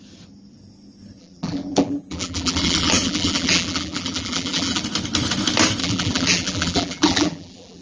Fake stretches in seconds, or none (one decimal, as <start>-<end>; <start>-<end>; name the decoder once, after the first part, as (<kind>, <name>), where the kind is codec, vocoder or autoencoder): 1.2-4.8 (vocoder, BigVGAN v2); 5.8-7.8